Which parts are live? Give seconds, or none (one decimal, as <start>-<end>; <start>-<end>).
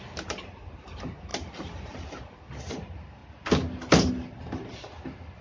0.0-5.4